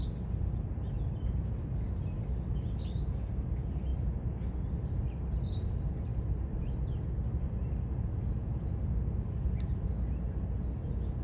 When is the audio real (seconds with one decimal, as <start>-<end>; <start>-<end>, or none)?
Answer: 0.0-11.2